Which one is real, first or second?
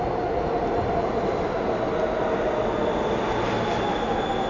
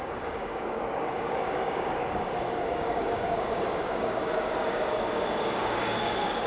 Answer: first